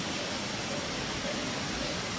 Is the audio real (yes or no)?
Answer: yes